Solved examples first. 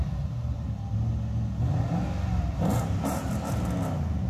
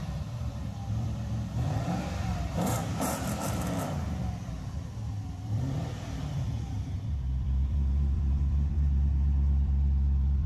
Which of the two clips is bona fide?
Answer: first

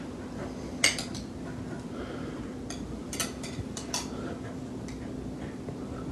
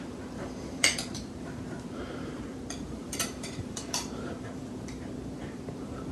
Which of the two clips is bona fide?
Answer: first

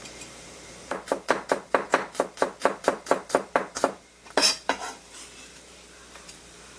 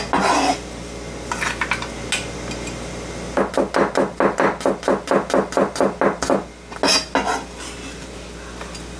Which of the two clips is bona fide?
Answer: second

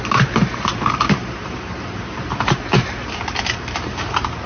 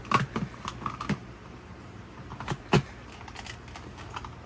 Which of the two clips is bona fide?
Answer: second